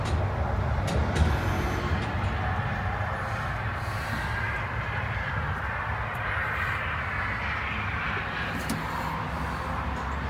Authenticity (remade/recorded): recorded